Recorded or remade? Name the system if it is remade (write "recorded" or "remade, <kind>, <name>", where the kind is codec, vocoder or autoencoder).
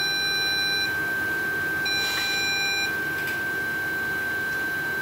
recorded